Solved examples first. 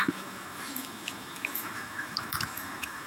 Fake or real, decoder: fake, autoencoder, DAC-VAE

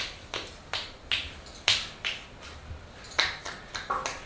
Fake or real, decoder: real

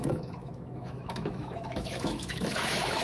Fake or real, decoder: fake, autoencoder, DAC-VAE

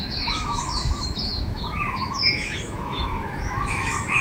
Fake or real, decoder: fake, autoencoder, DAC-VAE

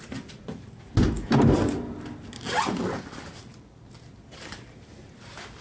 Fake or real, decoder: real